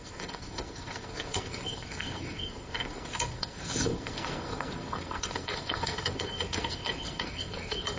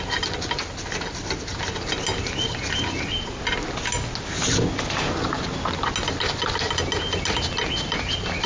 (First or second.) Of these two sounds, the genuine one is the second